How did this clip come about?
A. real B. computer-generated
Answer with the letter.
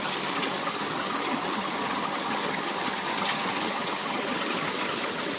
B